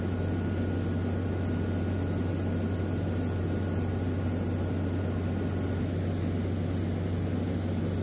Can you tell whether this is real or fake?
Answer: real